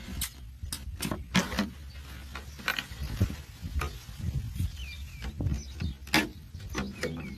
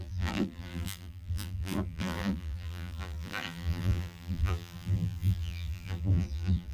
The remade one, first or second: second